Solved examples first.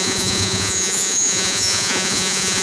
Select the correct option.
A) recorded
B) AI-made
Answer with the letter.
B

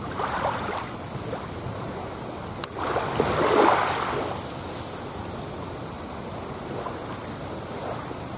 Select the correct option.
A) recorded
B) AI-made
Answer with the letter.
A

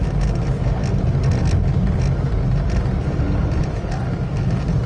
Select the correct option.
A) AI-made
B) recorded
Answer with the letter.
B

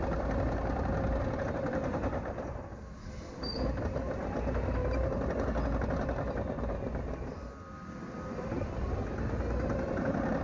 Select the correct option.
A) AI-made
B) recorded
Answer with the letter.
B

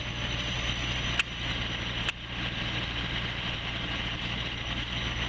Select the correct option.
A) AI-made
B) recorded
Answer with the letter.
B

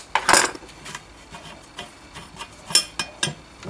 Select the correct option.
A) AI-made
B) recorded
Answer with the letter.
B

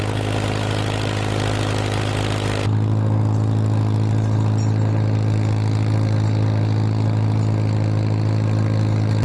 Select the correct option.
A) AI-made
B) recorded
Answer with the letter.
B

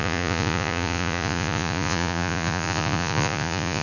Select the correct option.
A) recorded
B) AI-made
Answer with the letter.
B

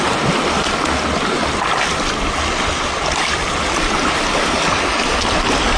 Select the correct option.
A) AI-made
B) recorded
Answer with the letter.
B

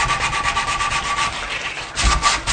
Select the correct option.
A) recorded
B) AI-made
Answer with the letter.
A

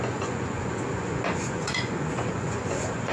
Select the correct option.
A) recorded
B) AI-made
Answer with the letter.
B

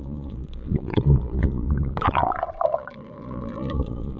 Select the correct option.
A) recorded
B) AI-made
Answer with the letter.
B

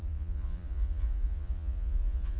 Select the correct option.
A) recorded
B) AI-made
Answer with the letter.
B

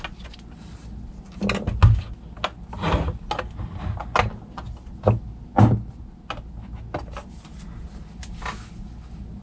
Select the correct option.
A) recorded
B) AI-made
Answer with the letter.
A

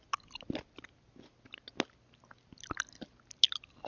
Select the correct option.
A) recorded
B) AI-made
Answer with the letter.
A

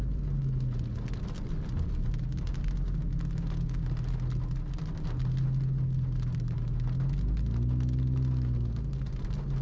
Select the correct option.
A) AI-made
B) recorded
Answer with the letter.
B